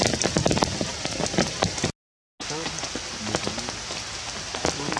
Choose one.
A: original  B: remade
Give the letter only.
A